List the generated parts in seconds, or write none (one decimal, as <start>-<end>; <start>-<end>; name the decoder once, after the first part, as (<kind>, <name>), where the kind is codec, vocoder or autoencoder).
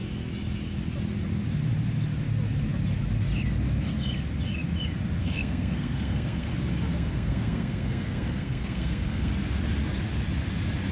5.2-6.5 (codec, SNAC); 6.9-9.3